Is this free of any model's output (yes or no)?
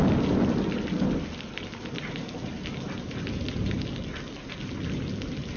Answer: yes